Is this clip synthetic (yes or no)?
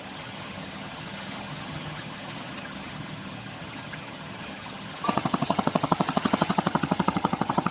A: yes